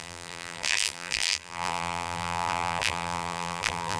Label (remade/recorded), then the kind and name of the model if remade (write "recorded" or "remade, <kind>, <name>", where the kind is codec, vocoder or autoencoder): remade, vocoder, BigVGAN v2